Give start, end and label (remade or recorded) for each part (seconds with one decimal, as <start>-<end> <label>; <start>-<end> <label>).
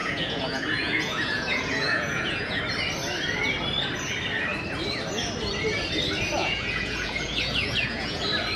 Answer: 0.0-2.6 remade; 2.6-6.4 recorded; 6.4-8.2 remade; 8.2-8.6 recorded